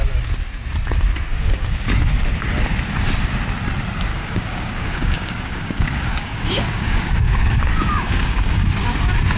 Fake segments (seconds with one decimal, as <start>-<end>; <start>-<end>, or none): 1.3-1.9; 4.1-8.7